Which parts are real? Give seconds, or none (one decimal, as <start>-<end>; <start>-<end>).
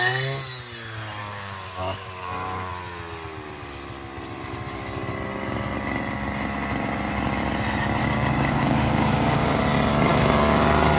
0.0-1.2; 2.7-8.0; 9.6-10.1